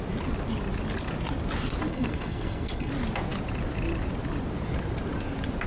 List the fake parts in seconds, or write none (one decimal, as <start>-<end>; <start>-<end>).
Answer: 1.9-2.9